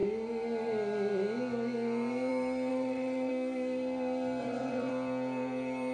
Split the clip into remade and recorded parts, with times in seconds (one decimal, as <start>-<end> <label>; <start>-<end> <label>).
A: 0.0-2.7 recorded; 2.7-3.3 remade; 3.3-4.4 recorded; 4.4-4.9 remade; 4.9-5.9 recorded